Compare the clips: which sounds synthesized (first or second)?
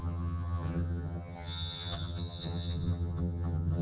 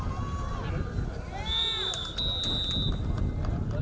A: first